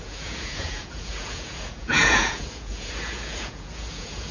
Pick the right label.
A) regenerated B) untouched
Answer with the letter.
A